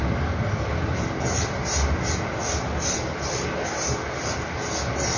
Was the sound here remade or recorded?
recorded